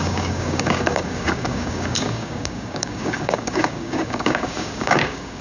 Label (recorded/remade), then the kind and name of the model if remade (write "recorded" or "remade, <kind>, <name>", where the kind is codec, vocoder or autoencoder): remade, codec, DAC